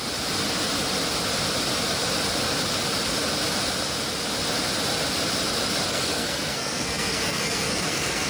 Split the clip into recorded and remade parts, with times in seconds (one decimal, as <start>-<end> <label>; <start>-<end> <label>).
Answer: 0.0-5.9 recorded; 5.9-8.3 remade